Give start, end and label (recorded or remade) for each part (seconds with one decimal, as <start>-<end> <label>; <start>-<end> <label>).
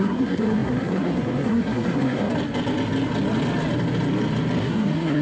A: 0.0-2.3 remade; 2.3-4.6 recorded; 4.6-5.2 remade